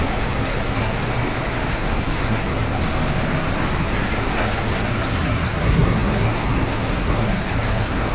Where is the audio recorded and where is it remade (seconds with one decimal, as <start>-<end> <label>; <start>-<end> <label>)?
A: 0.0-1.0 remade; 1.0-1.7 recorded; 1.7-2.8 remade; 2.8-3.8 recorded; 3.8-8.1 remade